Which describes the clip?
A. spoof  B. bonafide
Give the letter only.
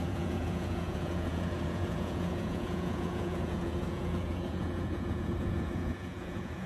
A